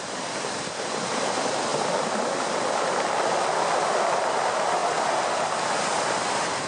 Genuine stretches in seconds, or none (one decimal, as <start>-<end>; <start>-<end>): 4.8-6.3